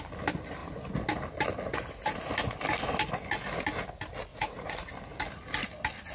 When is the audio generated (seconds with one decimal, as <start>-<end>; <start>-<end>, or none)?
4.3-4.9